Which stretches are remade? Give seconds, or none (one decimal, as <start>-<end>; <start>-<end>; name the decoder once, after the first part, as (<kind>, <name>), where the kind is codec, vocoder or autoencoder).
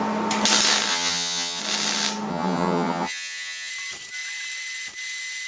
0.9-1.6 (vocoder, HiFi-GAN); 2.3-3.7